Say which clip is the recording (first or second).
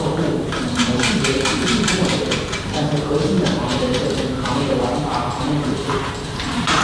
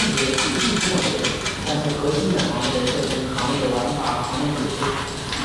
second